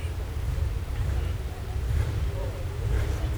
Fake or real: fake